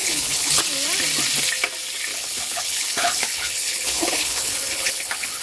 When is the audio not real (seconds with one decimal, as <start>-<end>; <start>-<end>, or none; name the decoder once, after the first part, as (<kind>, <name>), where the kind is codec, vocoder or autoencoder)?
0.0-0.6 (codec, HILCodec); 2.1-5.4